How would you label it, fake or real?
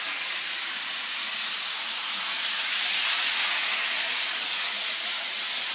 fake